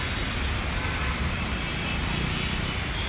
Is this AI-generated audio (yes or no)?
no